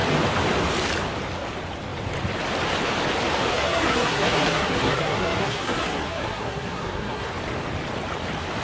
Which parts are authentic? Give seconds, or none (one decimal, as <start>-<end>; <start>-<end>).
0.0-3.5; 7.3-8.6